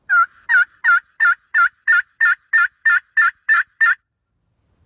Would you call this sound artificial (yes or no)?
no